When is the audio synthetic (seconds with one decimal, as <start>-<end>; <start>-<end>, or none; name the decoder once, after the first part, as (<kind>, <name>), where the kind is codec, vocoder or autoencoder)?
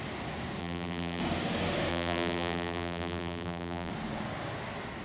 0.6-1.2 (vocoder, BigVGAN v2); 1.9-3.9